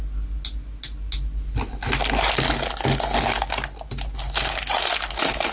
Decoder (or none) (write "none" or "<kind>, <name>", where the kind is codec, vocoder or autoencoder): none